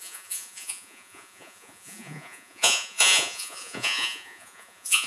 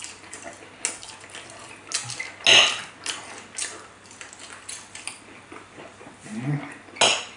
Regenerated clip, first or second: first